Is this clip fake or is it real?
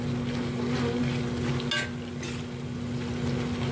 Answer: real